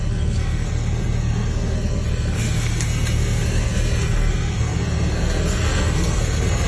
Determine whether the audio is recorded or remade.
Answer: remade